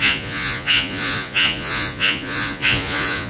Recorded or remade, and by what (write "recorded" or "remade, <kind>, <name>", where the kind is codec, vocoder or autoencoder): remade, vocoder, Vocos